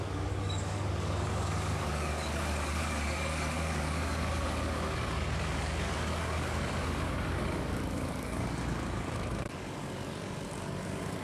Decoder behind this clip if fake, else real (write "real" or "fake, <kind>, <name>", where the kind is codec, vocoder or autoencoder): fake, codec, DAC